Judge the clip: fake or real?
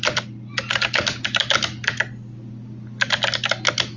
real